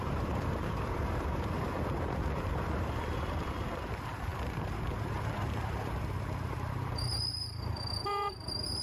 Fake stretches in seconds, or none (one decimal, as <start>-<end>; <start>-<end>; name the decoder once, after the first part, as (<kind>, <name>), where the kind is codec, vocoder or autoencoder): 0.0-8.8 (vocoder, BigVGAN v2)